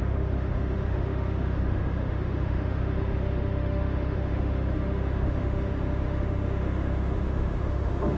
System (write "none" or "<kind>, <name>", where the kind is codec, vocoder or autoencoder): autoencoder, DAC-VAE